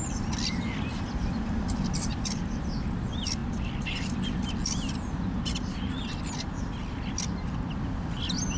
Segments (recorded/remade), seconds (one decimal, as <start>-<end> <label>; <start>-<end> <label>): 0.0-8.6 recorded